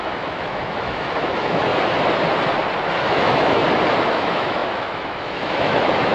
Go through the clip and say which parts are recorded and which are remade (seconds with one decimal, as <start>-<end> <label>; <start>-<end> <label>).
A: 0.0-1.7 remade; 1.7-3.0 recorded; 3.0-3.6 remade; 3.6-4.1 recorded; 4.1-6.1 remade

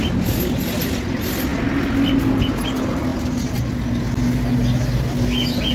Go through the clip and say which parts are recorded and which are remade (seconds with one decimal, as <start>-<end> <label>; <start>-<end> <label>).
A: 0.0-5.7 recorded